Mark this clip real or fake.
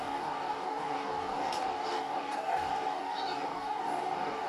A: fake